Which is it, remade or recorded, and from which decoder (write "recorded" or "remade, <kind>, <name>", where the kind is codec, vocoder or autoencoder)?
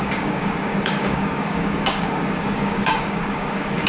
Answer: remade, codec, DAC